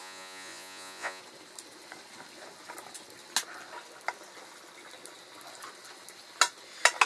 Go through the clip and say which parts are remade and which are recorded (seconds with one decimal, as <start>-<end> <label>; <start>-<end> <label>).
0.0-1.2 remade; 1.2-7.1 recorded